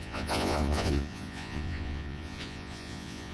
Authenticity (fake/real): fake